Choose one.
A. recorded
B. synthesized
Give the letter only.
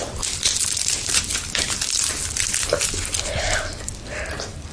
B